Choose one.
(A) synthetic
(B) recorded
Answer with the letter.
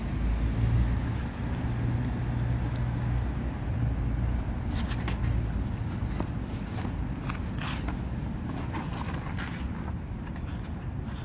B